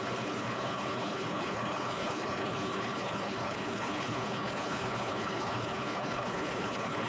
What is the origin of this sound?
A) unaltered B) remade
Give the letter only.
B